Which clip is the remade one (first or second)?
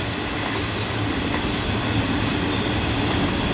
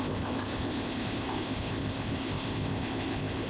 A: second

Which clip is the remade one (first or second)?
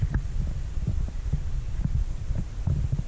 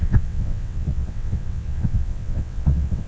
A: second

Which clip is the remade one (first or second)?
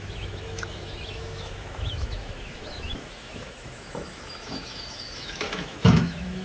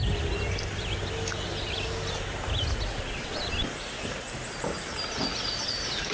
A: first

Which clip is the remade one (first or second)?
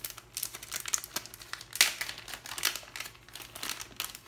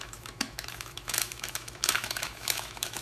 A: second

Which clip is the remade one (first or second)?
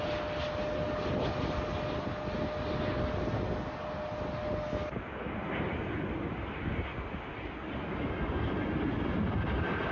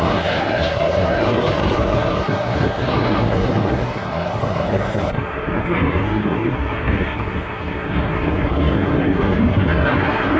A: second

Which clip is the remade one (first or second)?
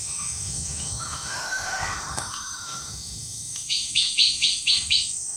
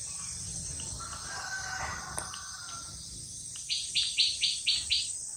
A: first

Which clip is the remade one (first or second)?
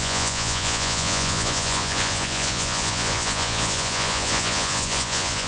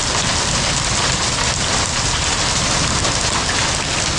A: first